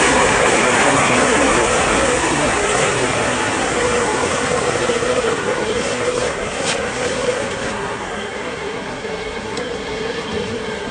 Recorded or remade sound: remade